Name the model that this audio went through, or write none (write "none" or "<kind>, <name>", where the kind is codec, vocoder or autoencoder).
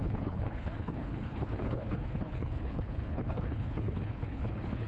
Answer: codec, HILCodec